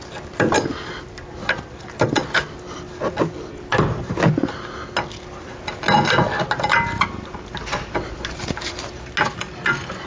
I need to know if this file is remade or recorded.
recorded